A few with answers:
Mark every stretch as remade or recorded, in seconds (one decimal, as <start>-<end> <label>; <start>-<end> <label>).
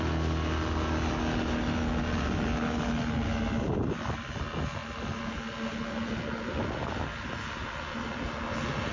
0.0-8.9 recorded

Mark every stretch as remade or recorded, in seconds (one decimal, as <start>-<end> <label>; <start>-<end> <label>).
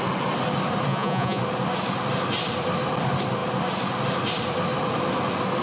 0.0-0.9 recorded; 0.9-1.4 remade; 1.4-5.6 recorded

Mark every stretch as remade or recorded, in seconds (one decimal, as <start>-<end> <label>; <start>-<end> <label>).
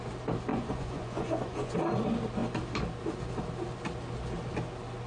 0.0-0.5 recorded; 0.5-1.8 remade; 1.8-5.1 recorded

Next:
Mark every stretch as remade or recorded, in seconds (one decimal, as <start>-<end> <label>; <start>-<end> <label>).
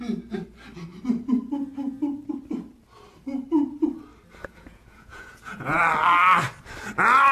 0.0-4.4 recorded; 4.4-5.8 remade; 5.8-7.3 recorded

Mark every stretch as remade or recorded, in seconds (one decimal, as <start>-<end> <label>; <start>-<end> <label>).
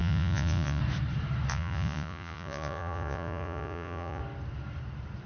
0.0-0.8 remade; 0.8-1.5 recorded; 1.5-4.2 remade; 4.2-5.3 recorded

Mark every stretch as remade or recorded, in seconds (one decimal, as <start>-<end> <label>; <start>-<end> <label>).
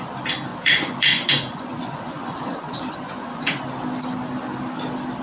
0.0-0.5 recorded; 0.5-3.6 remade; 3.6-5.2 recorded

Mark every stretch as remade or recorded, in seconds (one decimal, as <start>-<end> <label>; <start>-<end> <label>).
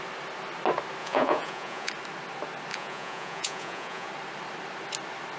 0.0-1.0 recorded; 1.0-1.9 remade; 1.9-2.7 recorded; 2.7-4.1 remade; 4.1-5.4 recorded